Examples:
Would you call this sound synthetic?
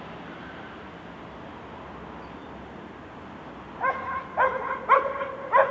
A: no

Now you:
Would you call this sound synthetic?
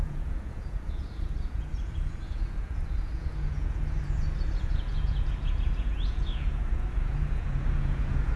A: yes